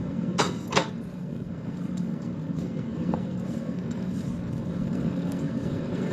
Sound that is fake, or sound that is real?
fake